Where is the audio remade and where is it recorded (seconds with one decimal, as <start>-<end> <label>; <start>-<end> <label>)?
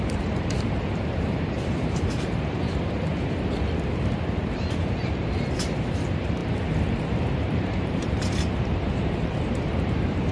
0.0-3.1 remade; 3.1-4.4 recorded; 4.4-10.3 remade